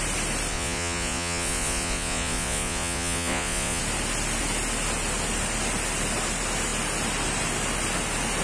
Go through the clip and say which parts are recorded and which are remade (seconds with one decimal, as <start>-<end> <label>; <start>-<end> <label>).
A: 0.0-0.5 recorded; 0.5-3.8 remade; 3.8-8.4 recorded